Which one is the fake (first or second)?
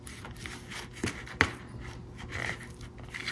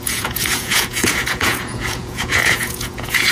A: second